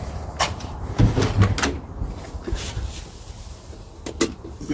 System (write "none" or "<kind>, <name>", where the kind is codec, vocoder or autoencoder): none